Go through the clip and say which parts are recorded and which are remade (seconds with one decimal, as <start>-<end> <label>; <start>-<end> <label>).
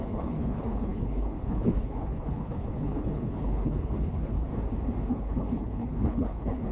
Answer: 0.0-4.5 remade; 4.5-5.1 recorded; 5.1-6.7 remade